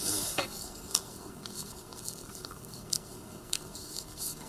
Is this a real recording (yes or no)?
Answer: no